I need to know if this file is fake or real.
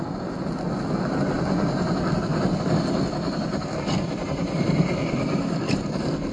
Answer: real